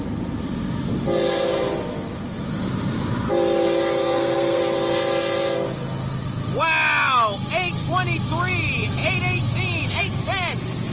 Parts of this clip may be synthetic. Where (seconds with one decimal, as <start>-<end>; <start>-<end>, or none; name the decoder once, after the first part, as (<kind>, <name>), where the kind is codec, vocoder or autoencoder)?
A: 4.0-4.6 (codec, SNAC)